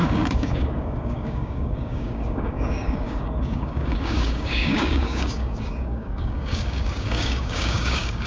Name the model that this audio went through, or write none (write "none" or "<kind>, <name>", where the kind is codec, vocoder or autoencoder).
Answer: codec, DAC